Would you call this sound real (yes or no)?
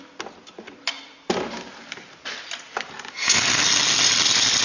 yes